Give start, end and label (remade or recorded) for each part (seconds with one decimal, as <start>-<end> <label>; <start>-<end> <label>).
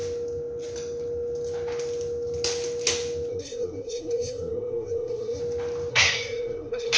0.0-3.3 recorded; 3.3-5.4 remade; 5.4-5.9 recorded; 5.9-7.0 remade